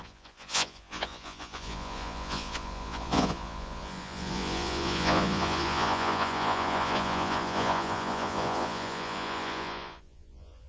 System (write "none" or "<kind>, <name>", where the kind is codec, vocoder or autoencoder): vocoder, Vocos